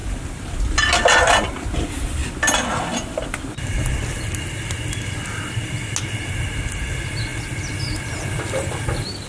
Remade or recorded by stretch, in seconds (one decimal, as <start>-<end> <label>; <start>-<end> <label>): 0.0-9.3 recorded